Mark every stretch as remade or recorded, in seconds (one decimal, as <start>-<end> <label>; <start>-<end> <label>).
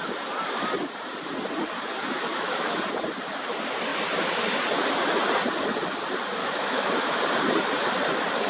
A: 0.0-2.3 recorded; 2.3-2.8 remade; 2.8-6.4 recorded; 6.4-7.2 remade; 7.2-8.5 recorded